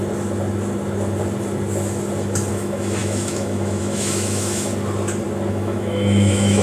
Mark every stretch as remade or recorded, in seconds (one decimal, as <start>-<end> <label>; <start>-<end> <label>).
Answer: 0.0-2.5 recorded; 2.5-4.7 remade; 4.7-5.5 recorded; 5.5-6.6 remade